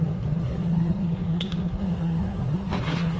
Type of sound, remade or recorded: remade